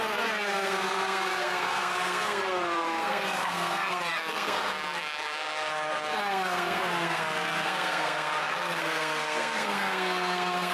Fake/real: fake